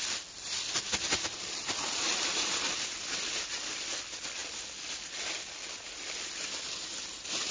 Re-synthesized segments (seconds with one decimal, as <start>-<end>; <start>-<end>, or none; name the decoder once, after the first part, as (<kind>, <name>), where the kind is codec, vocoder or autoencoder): none